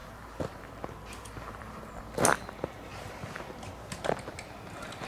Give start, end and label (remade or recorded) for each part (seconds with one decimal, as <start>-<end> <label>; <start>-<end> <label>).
0.0-0.6 remade; 0.6-1.2 recorded; 1.2-1.9 remade; 1.9-5.1 recorded